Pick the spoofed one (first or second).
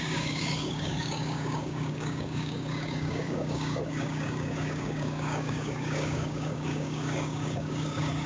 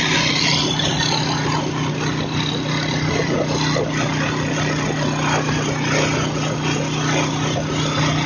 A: first